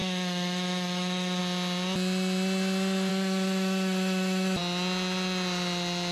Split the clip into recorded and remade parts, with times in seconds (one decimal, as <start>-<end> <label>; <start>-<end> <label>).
0.0-1.4 remade; 1.4-3.1 recorded; 3.1-4.6 remade; 4.6-6.1 recorded